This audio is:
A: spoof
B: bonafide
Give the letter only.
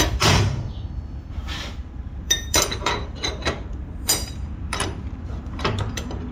A